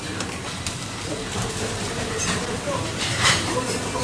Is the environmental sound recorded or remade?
remade